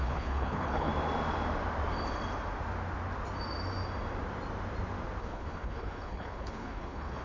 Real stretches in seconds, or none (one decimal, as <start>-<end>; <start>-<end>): 0.9-5.2